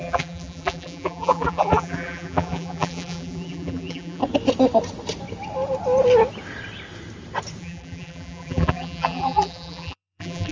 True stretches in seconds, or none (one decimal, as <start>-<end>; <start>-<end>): 4.2-7.6